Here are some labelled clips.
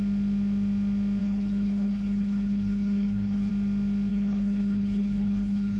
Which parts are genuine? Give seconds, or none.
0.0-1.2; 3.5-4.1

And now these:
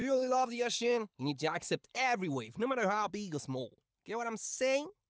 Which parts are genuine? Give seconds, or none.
3.1-5.1

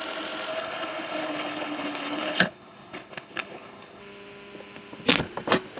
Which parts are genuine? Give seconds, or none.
0.0-0.5; 4.0-5.8

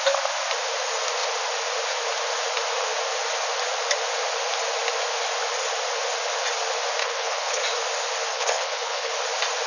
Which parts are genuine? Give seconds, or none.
0.0-7.0; 7.6-8.3; 9.1-9.7